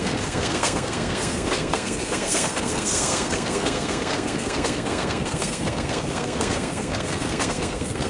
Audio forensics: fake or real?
fake